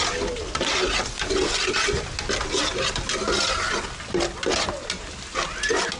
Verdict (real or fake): real